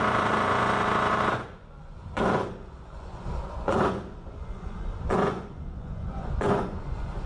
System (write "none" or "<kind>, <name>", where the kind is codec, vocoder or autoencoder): vocoder, Vocos